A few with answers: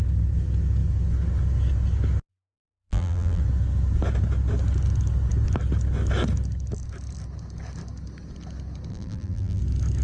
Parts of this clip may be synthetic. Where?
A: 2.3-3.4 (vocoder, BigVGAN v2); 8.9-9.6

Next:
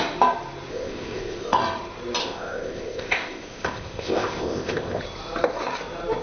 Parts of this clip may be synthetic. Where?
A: 0.7-1.6 (codec, ZipCodec); 2.2-5.0